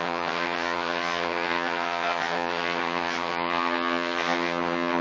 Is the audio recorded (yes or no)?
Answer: no